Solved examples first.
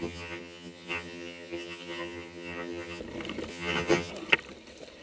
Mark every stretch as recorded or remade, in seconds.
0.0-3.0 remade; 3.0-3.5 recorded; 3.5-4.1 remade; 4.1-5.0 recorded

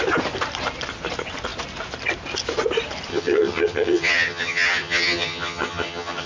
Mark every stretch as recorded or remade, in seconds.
0.0-3.1 recorded; 3.1-6.3 remade

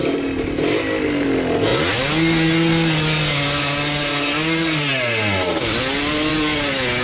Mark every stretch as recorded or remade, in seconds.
0.0-7.0 recorded

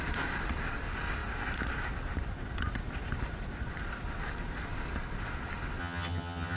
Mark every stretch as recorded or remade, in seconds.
0.0-5.8 recorded; 5.8-6.6 remade

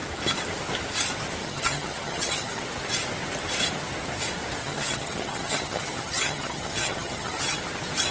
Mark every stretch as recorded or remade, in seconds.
0.0-1.4 recorded; 1.4-2.6 remade; 2.6-4.6 recorded; 4.6-7.6 remade; 7.6-8.1 recorded